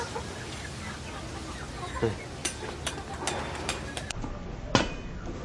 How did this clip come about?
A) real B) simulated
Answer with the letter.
A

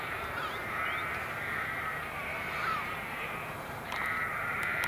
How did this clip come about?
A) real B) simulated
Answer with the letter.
B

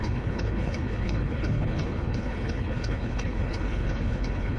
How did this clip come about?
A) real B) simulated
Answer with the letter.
B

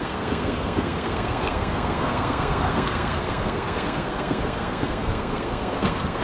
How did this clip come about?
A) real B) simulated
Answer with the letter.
B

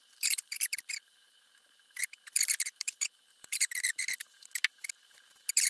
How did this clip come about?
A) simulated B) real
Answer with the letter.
A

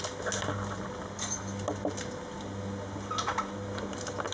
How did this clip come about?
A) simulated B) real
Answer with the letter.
B